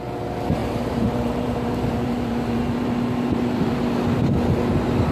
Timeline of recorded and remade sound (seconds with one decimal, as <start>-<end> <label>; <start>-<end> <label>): 0.0-0.6 recorded; 0.6-3.7 remade; 3.7-5.1 recorded